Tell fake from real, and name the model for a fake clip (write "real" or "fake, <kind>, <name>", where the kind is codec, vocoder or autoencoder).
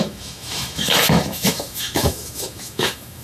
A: fake, autoencoder, DAC-VAE